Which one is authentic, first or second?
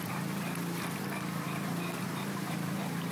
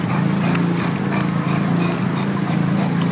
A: second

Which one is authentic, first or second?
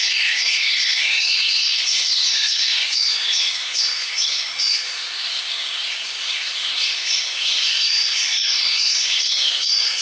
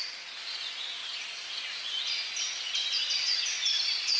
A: second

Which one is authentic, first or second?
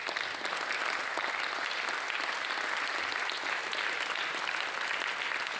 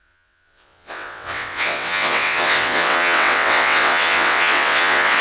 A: first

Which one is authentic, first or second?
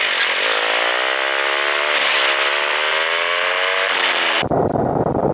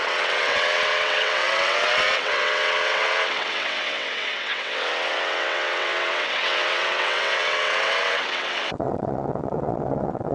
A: first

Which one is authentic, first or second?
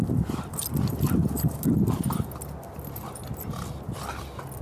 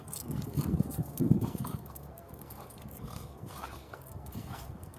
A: first